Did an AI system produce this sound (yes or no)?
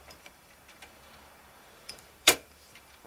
yes